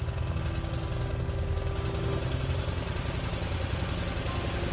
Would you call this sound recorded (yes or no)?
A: yes